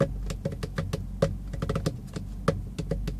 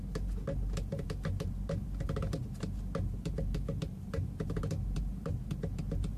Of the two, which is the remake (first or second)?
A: second